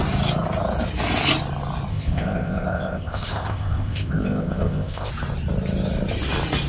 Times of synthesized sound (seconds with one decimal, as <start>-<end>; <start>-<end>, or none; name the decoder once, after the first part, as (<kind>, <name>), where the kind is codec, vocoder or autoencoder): 1.9-5.1 (codec, ZipCodec)

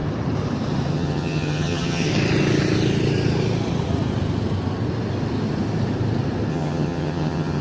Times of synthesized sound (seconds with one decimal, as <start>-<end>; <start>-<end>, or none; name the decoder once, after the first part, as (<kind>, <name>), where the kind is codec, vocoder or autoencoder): 0.9-2.1 (vocoder, HiFi-GAN); 6.5-7.6

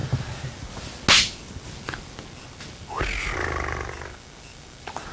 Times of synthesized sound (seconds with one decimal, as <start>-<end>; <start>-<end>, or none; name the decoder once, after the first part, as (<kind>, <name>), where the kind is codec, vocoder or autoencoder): none

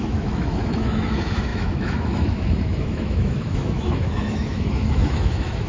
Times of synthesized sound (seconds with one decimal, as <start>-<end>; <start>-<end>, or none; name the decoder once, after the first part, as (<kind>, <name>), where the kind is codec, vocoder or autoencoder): 0.0-5.7 (autoencoder, DAC-VAE)

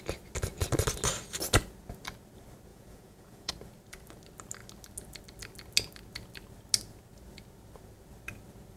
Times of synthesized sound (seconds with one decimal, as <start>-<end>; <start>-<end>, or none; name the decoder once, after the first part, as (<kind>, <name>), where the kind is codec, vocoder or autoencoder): 2.7-3.5 (vocoder, Vocos)

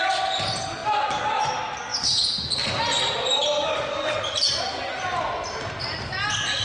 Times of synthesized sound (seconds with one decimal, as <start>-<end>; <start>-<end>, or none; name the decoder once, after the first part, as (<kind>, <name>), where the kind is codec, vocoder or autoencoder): none

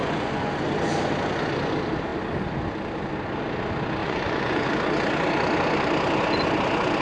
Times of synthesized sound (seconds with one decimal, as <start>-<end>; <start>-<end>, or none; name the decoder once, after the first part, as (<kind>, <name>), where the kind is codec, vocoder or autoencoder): 0.0-0.5 (vocoder, Vocos); 4.0-4.7

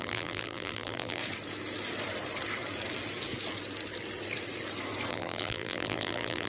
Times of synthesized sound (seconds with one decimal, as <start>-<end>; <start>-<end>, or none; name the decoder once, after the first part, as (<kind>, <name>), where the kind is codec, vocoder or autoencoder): 0.0-1.2 (vocoder, BigVGAN v2); 5.1-6.5